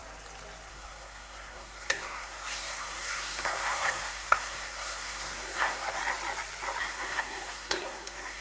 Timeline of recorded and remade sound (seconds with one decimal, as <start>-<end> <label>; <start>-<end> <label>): 0.0-0.7 recorded; 0.7-6.0 remade; 6.0-6.8 recorded; 6.8-8.4 remade